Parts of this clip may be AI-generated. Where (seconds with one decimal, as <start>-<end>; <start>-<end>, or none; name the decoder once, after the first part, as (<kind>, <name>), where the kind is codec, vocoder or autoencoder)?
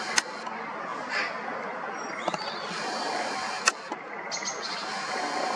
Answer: none